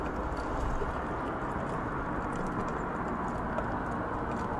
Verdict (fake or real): real